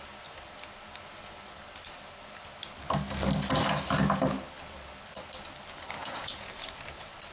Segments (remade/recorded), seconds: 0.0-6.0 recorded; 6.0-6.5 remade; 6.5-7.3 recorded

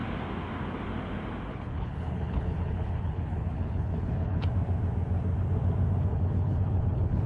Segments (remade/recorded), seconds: 0.0-1.5 recorded; 1.5-4.5 remade; 4.5-6.1 recorded; 6.1-7.3 remade

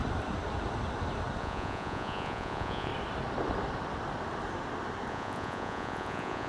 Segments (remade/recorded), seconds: 0.0-1.4 recorded; 1.4-2.9 remade; 2.9-5.1 recorded; 5.1-6.5 remade

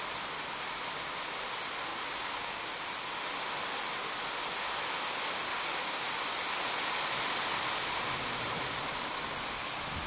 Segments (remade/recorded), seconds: 0.0-1.9 recorded; 1.9-2.6 remade; 2.6-5.5 recorded; 5.5-6.0 remade; 6.0-10.1 recorded

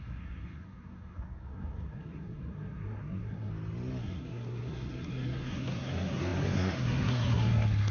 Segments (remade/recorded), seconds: 0.0-3.5 remade; 3.5-4.0 recorded; 4.0-7.9 remade

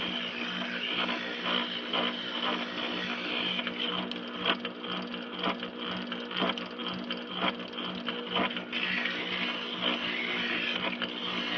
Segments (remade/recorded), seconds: 0.0-11.6 recorded